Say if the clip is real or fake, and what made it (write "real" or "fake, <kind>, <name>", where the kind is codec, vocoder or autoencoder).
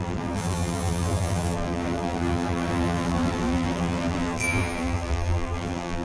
fake, vocoder, BigVGAN v2